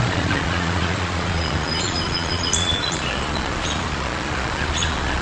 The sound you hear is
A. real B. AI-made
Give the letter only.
B